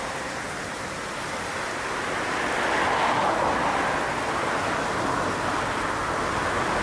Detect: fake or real real